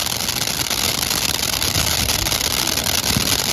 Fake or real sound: real